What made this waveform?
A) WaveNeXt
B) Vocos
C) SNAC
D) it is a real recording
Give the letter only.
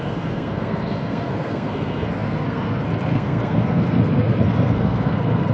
C